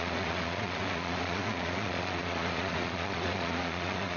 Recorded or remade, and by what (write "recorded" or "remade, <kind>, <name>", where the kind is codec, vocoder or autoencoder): remade, vocoder, Vocos